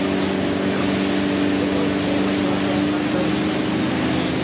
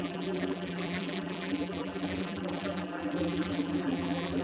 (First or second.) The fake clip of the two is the second